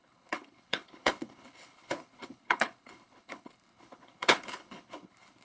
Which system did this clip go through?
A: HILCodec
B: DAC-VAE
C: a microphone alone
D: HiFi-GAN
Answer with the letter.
A